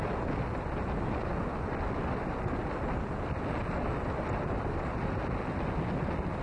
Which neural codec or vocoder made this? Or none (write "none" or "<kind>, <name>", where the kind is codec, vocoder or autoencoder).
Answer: none